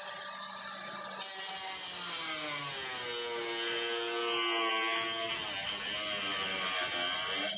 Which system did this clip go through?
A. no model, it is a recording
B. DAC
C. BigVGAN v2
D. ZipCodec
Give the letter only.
A